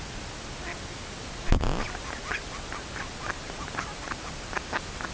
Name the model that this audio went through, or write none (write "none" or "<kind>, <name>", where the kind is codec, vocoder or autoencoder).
none